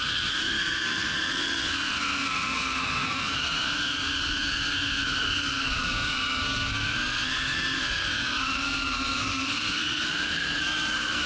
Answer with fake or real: fake